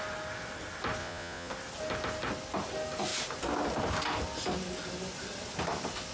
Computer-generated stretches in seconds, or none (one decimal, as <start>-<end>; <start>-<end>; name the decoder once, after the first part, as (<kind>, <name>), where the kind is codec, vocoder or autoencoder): 1.0-1.5 (vocoder, Vocos)